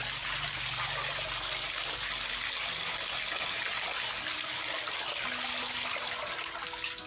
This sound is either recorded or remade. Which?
recorded